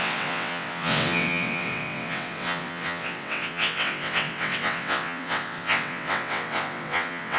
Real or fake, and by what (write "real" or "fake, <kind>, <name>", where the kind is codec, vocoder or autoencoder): fake, vocoder, WaveNeXt